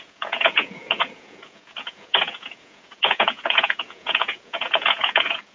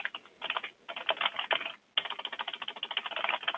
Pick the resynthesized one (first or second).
first